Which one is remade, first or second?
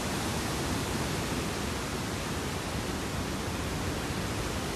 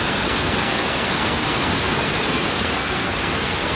second